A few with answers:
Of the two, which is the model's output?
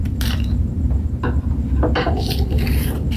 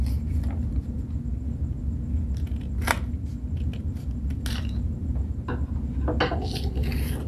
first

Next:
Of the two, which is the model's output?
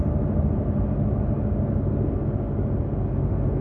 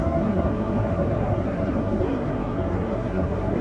second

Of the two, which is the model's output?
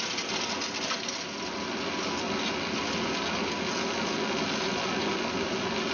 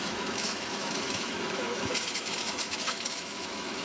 second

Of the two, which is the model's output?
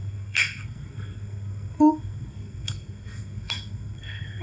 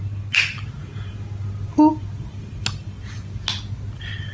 first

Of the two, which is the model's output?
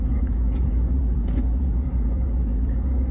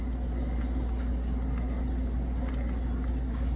first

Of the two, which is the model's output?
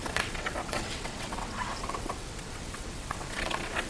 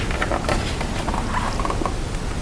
first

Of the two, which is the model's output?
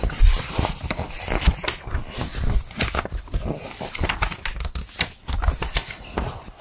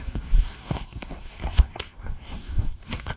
second